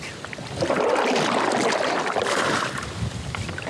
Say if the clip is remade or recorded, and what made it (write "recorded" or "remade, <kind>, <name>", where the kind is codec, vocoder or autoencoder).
recorded